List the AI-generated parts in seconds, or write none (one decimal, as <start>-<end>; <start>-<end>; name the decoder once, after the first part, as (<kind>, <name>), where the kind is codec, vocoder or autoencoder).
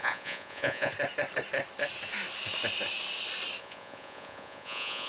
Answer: 0.0-0.9 (vocoder, Vocos); 3.6-5.1